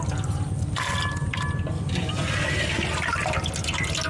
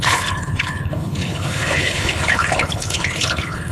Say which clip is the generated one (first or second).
second